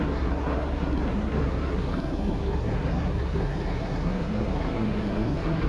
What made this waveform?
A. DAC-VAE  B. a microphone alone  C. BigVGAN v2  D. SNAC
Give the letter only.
D